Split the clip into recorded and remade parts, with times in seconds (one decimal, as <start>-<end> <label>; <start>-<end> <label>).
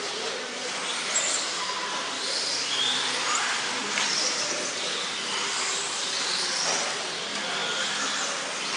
0.0-8.8 recorded